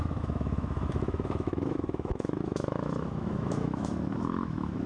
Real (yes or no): no